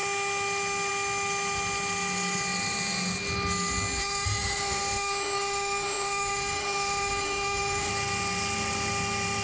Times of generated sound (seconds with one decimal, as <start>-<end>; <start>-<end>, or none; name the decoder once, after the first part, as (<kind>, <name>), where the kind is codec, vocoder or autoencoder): 4.0-7.9 (autoencoder, DAC-VAE)